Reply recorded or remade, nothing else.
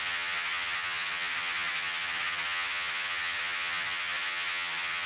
remade